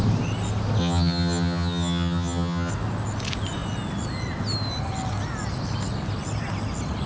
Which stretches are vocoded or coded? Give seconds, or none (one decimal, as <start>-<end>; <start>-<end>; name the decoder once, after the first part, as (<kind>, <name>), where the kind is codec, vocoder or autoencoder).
0.8-2.7 (vocoder, HiFi-GAN)